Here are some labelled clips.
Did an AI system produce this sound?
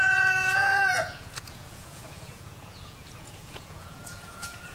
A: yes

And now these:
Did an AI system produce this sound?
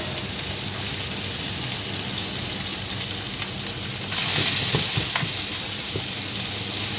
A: no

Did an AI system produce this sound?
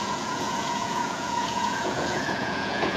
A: yes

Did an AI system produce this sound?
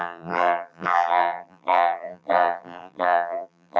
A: yes